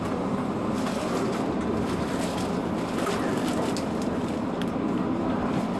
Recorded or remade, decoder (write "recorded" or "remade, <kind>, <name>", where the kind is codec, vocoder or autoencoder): recorded